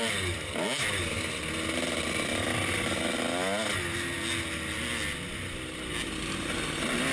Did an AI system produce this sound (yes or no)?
no